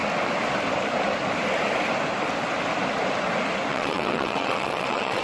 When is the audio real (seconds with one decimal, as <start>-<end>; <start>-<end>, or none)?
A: 0.0-3.7

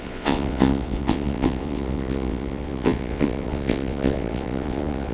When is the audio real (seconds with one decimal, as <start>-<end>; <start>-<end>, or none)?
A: none

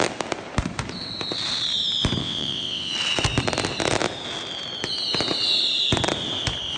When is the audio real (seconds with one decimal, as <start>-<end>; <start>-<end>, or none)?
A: 0.0-2.2; 2.9-6.8

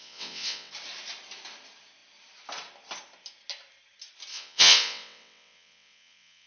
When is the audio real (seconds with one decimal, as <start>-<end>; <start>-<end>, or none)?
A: 0.7-4.3

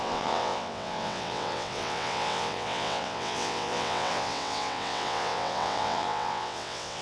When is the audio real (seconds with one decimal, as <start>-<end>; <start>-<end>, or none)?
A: none

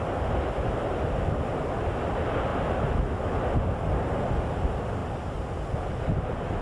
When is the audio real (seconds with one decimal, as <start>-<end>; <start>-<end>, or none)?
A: 0.0-6.6

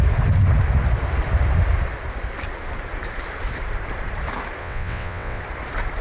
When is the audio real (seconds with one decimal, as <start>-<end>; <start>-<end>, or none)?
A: 0.0-4.6; 5.4-6.0

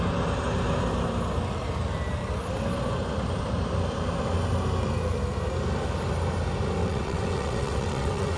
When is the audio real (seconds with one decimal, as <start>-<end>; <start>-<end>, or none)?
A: 0.0-6.8